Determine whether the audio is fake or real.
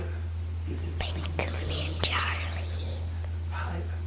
real